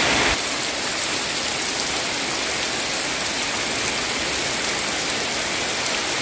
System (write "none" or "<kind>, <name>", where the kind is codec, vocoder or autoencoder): none